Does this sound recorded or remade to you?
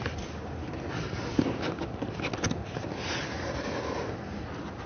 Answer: recorded